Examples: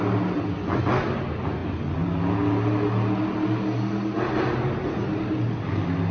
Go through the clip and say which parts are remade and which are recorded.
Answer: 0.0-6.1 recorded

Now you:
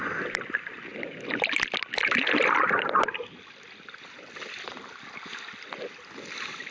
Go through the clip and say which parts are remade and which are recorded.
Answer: 0.0-6.7 recorded

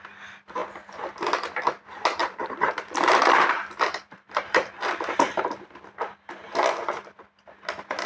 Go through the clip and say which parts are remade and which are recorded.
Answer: 0.0-2.2 recorded; 2.2-5.4 remade; 5.4-8.1 recorded

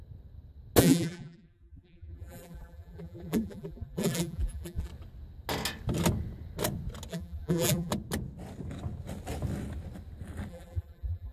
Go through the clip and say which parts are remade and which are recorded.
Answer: 0.0-0.8 recorded; 0.8-4.9 remade; 4.9-7.1 recorded; 7.1-7.9 remade; 7.9-10.5 recorded; 10.5-11.3 remade

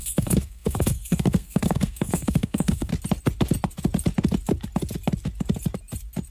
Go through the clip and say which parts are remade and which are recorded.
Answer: 0.0-2.9 remade; 2.9-6.3 recorded